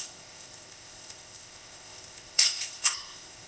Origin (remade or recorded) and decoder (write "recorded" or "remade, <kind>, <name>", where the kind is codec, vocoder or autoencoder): remade, codec, ZipCodec